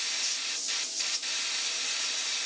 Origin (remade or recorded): recorded